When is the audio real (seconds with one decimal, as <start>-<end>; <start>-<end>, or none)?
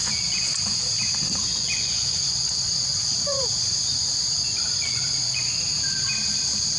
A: 0.8-1.5; 5.6-6.8